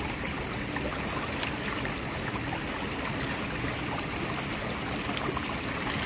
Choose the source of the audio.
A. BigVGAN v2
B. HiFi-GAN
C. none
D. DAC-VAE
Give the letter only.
C